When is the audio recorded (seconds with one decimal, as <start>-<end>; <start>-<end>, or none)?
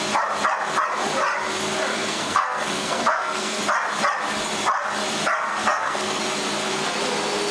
0.0-1.9; 3.6-5.5; 6.2-7.5